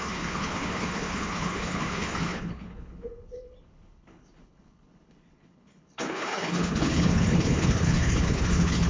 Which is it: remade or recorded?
remade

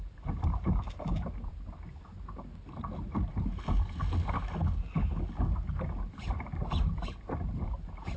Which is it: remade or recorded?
recorded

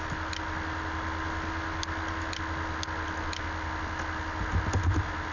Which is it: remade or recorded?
recorded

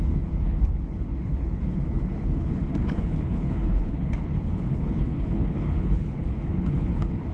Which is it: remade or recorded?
remade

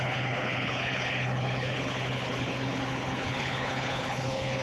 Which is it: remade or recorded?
remade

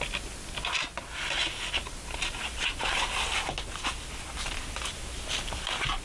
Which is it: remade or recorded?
recorded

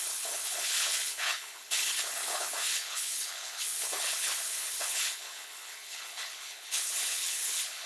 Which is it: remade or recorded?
remade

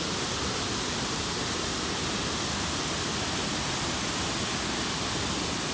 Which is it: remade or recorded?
recorded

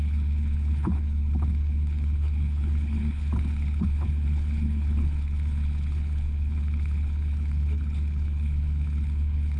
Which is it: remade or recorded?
remade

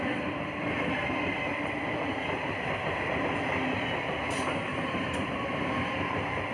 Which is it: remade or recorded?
recorded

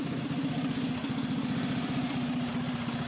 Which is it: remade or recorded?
recorded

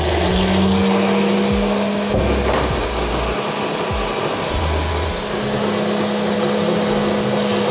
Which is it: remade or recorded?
recorded